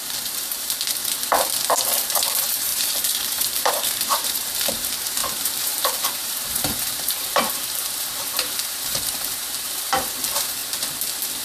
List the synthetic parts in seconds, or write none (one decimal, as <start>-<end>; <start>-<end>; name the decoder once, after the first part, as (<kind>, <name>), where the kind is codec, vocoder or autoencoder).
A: 0.0-1.0 (vocoder, BigVGAN v2); 1.7-10.6